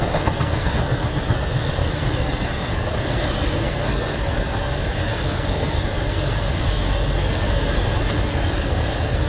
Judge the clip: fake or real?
fake